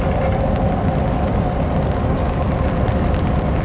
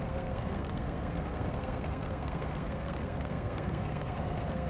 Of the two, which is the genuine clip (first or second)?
first